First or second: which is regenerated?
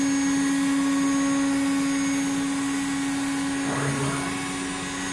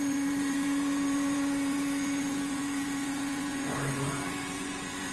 second